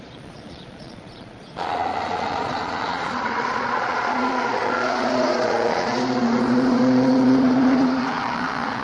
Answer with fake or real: fake